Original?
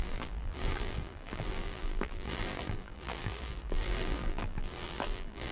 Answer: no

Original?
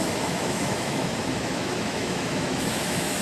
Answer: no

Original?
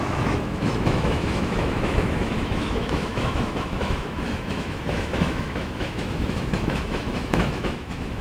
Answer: no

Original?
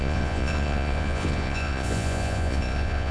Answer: no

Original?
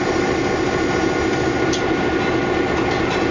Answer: yes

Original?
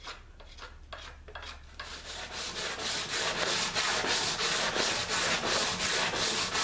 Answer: yes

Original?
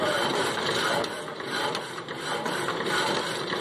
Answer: no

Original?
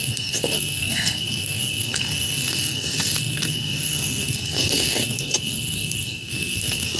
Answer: no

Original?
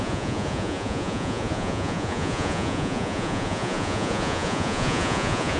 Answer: no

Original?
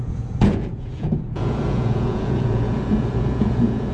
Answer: no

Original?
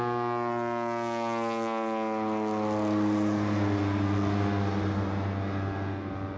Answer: yes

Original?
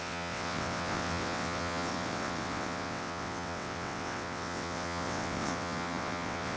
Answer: no